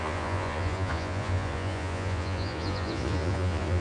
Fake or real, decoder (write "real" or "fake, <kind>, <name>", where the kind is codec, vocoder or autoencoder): fake, vocoder, Vocos